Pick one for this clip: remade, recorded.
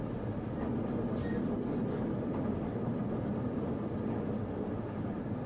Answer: recorded